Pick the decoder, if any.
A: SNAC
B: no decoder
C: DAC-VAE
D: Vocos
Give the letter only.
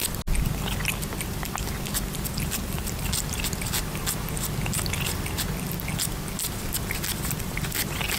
B